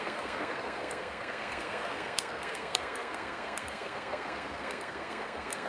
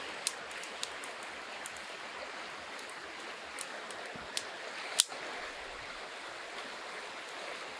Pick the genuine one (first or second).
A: second